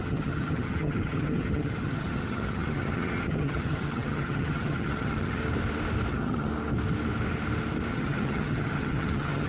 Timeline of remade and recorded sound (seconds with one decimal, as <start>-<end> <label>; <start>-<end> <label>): 0.0-5.4 remade; 5.4-6.1 recorded; 6.1-6.5 remade; 6.5-7.9 recorded; 7.9-9.5 remade